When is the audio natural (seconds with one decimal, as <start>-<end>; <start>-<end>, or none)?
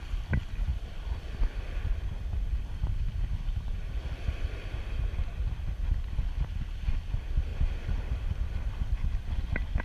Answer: 0.0-9.8